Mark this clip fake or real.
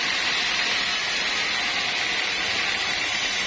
real